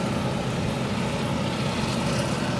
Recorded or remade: recorded